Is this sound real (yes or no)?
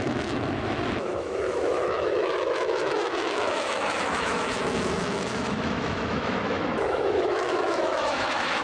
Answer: no